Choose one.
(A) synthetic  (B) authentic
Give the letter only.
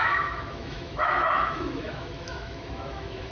A